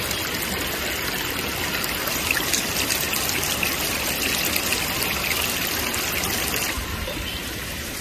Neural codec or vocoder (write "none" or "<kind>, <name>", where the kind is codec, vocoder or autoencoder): none